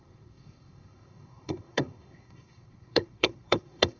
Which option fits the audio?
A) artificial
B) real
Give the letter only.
A